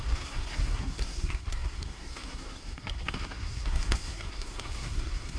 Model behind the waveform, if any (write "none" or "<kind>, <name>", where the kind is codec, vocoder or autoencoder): codec, SNAC